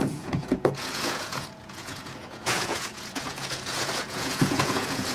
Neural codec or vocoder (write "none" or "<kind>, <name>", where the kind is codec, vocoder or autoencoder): vocoder, Vocos